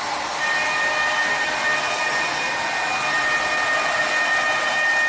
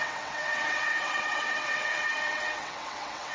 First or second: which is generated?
second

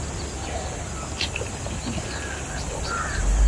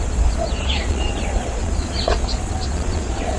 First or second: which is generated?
second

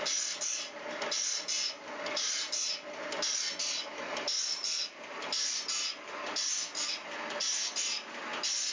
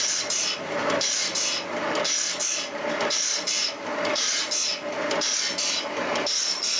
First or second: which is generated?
second